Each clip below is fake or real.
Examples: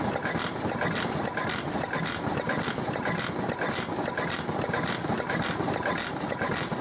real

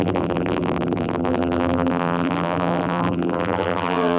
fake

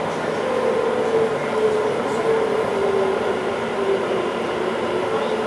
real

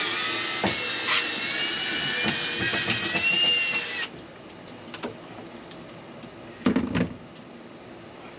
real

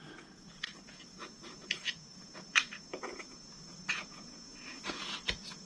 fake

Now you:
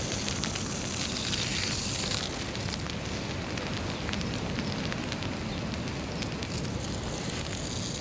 real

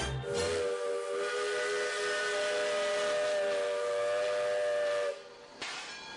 real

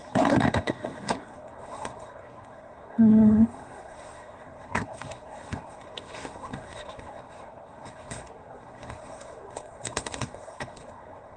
fake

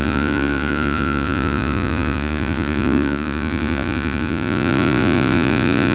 fake